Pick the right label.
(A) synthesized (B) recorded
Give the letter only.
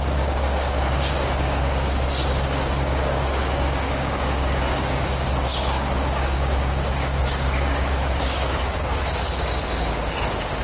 A